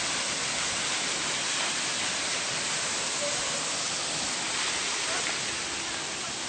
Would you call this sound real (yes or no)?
yes